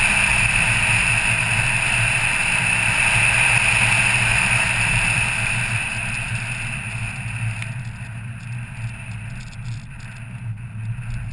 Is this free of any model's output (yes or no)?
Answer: yes